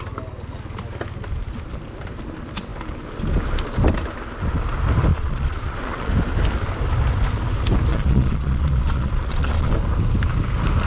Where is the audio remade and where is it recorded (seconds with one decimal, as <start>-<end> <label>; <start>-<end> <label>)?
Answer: 0.0-5.1 recorded; 5.1-6.1 remade; 6.1-7.9 recorded; 7.9-9.7 remade; 9.7-10.9 recorded